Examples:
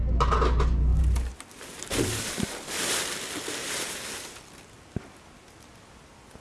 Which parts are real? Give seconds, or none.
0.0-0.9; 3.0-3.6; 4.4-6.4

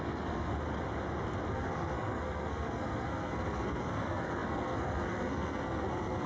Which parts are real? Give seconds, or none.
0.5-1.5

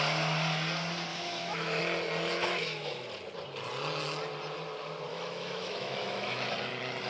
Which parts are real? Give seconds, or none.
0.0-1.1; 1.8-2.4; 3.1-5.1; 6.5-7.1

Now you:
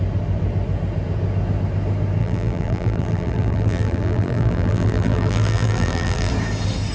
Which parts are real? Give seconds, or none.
0.0-2.2; 6.3-6.9